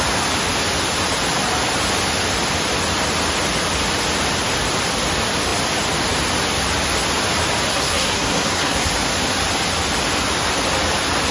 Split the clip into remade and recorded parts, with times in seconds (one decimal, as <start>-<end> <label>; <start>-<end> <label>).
0.0-7.7 recorded; 7.7-8.9 remade; 8.9-11.3 recorded